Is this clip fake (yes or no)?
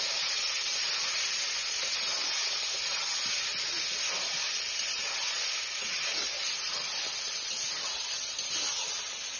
no